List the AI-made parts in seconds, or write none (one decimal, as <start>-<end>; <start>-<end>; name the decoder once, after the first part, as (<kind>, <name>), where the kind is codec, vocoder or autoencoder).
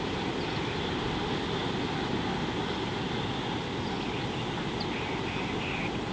none